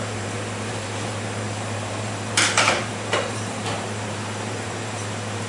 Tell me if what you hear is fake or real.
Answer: fake